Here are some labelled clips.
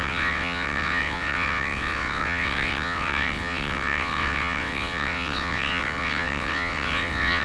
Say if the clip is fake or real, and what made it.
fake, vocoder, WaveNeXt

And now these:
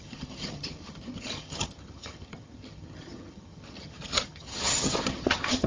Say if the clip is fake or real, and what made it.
fake, vocoder, HiFi-GAN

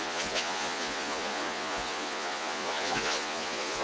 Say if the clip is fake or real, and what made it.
fake, vocoder, Vocos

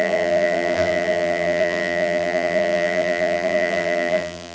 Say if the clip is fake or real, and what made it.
fake, vocoder, BigVGAN v2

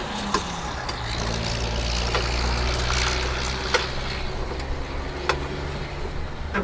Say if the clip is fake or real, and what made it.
real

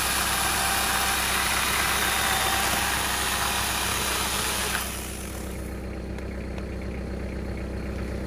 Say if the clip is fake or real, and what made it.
real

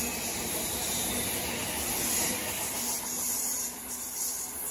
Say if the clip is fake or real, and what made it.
real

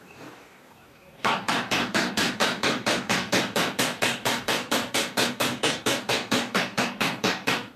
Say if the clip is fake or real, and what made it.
fake, codec, DAC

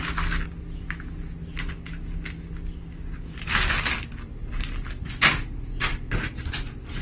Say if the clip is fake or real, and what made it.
real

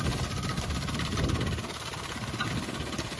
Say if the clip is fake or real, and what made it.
real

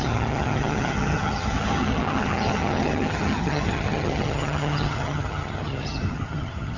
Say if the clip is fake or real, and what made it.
fake, vocoder, HiFi-GAN